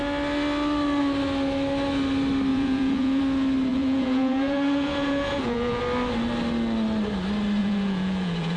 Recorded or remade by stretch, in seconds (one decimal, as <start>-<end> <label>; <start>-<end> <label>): 0.0-2.5 recorded; 2.5-3.2 remade; 3.2-3.7 recorded; 3.7-5.8 remade; 5.8-7.6 recorded; 7.6-8.6 remade